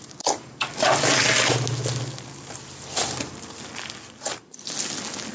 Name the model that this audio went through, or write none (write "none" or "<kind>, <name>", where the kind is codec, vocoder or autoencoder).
none